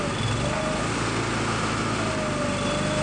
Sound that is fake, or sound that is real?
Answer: real